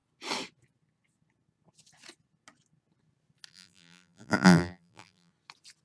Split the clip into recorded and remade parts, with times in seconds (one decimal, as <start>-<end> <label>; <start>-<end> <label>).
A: 0.0-3.5 recorded; 3.5-5.3 remade; 5.3-5.8 recorded